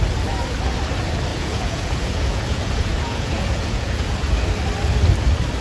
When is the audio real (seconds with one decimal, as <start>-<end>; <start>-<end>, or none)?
0.0-1.3; 4.3-5.6